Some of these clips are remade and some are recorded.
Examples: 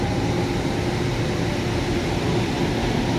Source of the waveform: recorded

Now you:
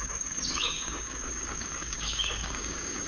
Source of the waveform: remade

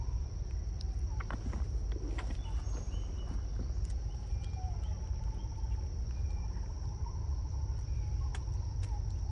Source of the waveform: recorded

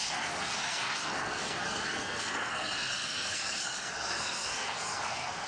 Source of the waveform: remade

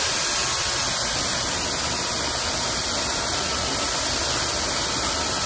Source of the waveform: recorded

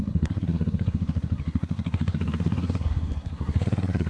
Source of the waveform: remade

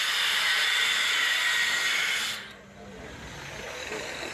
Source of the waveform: recorded